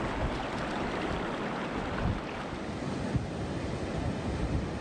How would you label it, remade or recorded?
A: recorded